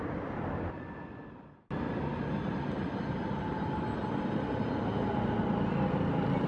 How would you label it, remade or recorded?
recorded